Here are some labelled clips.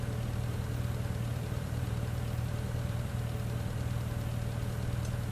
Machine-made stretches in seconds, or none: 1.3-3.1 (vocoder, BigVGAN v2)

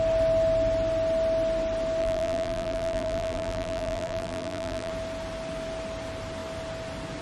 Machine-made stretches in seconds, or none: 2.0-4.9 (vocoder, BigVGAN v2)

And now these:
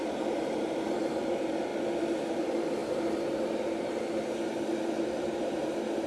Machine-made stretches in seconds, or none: 0.0-1.7 (vocoder, BigVGAN v2); 2.3-6.1

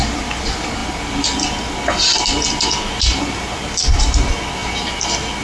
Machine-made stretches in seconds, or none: none

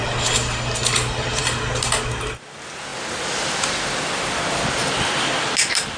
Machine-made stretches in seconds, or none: none